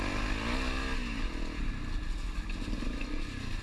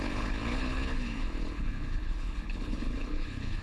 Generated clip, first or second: second